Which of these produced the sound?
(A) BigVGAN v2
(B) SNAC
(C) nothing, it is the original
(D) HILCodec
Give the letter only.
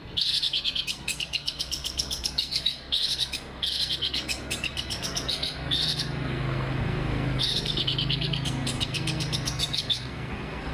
B